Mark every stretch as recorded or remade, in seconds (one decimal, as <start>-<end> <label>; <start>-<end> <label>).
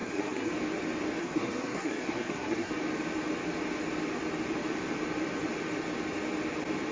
0.0-0.5 remade; 0.5-1.2 recorded; 1.2-2.7 remade; 2.7-6.9 recorded